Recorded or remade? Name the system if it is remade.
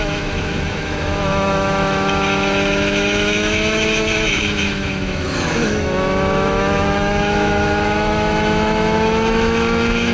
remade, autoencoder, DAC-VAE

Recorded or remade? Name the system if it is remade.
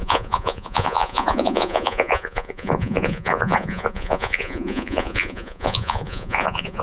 remade, vocoder, Vocos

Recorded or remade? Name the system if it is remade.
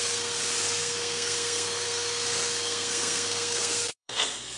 remade, codec, SNAC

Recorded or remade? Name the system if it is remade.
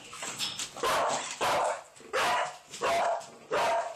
recorded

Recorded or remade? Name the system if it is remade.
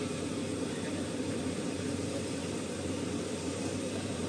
remade, vocoder, BigVGAN v2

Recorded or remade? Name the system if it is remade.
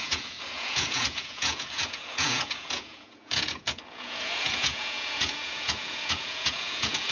remade, vocoder, Vocos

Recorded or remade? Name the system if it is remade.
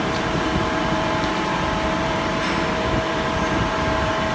remade, vocoder, BigVGAN v2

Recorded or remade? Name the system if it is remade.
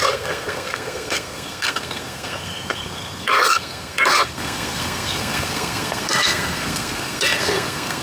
remade, codec, SNAC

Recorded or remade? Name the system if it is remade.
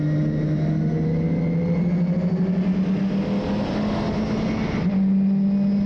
recorded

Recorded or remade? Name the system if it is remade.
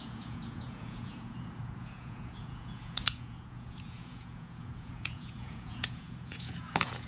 remade, vocoder, Vocos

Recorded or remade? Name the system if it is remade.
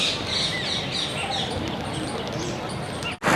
recorded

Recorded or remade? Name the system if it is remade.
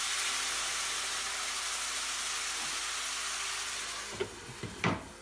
recorded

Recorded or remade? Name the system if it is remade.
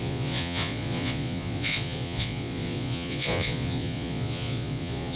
remade, vocoder, Vocos